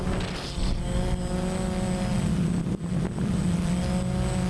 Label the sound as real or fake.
real